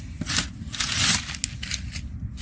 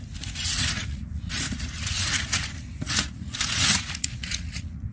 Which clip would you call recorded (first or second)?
first